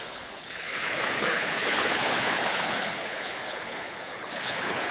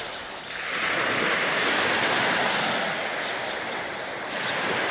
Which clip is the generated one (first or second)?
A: first